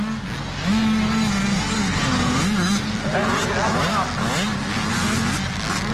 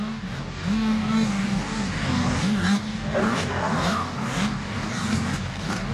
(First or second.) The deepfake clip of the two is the second